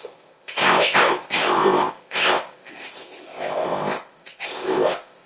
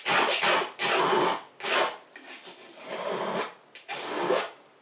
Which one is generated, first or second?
first